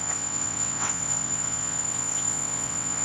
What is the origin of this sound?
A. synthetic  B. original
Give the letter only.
A